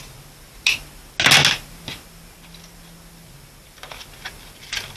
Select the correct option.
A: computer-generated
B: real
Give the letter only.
B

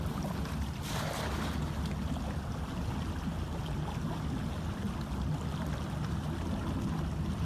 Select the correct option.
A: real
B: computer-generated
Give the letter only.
A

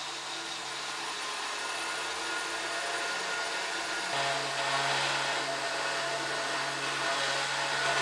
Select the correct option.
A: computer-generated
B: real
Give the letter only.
B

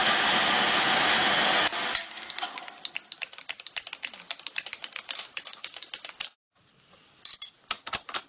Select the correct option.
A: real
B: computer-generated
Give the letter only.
A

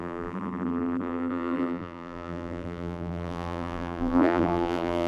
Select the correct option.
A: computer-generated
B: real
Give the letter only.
A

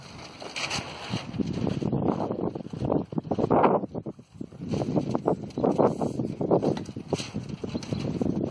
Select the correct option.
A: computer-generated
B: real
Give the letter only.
B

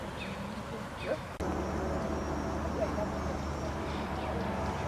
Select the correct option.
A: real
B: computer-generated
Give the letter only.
A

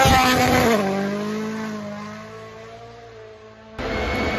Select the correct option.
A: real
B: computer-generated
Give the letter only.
A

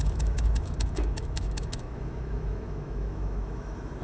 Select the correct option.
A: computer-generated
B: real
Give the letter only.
A